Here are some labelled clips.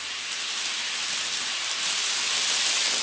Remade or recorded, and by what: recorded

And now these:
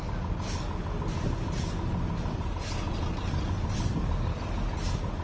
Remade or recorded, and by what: recorded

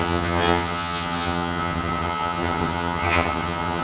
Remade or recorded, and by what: remade, vocoder, HiFi-GAN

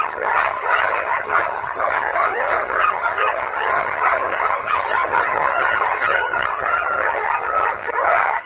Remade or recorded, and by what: remade, vocoder, HiFi-GAN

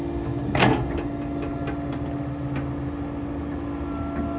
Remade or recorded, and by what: recorded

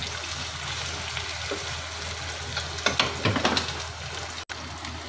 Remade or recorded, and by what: recorded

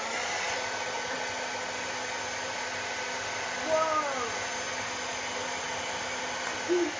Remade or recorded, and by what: recorded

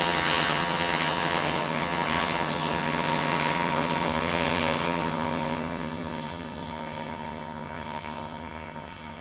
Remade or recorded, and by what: remade, vocoder, HiFi-GAN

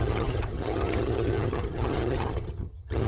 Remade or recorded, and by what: remade, vocoder, HiFi-GAN